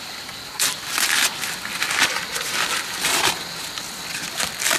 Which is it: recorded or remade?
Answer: recorded